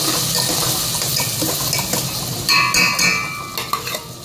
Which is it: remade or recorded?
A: recorded